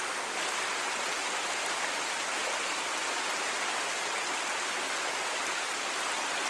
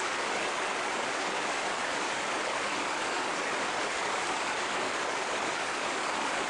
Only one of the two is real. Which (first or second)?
first